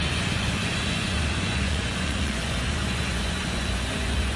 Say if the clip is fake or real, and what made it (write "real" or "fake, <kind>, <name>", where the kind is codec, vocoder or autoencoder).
fake, vocoder, Vocos